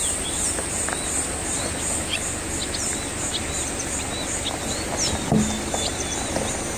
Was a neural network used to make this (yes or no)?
no